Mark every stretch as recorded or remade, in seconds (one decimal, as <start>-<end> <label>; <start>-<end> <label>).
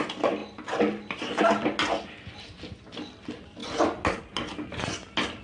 0.0-5.4 recorded